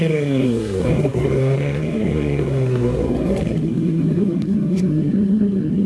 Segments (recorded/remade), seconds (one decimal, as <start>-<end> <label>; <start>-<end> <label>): 0.0-5.9 remade